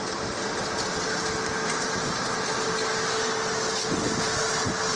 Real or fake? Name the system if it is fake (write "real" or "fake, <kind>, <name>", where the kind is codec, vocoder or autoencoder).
real